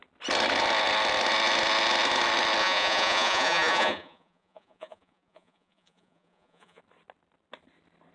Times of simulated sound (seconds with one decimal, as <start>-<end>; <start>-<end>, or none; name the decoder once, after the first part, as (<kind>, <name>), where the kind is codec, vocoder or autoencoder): 2.6-6.8 (vocoder, Vocos)